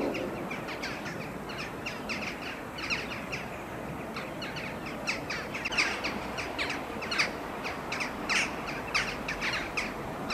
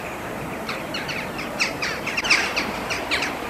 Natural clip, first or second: first